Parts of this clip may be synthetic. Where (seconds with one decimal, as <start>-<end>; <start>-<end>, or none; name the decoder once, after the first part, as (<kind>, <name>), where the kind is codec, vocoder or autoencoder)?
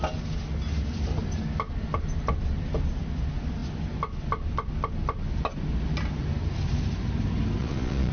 7.6-8.1 (vocoder, Vocos)